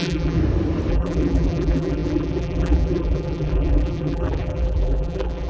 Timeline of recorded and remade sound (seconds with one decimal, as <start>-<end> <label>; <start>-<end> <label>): 0.0-0.4 remade; 0.4-0.9 recorded; 0.9-5.5 remade